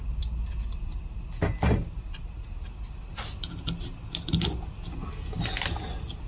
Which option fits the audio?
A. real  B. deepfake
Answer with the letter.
A